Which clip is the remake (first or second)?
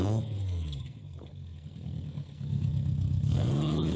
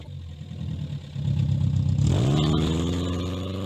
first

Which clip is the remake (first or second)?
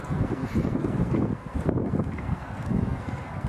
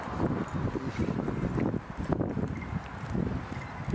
first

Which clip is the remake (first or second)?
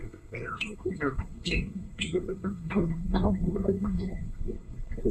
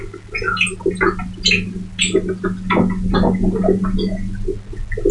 first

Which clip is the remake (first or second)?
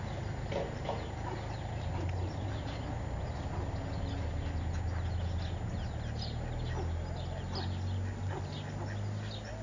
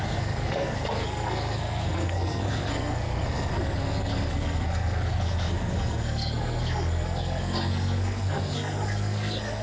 second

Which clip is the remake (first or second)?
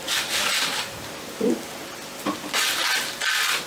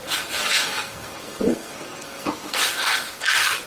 second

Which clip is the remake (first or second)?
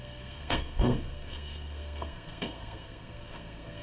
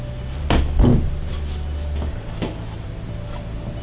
first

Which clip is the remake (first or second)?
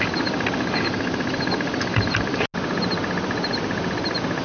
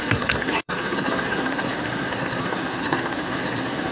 second